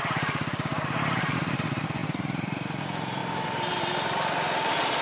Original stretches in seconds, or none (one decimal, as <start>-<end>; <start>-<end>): 0.7-1.5; 3.2-3.7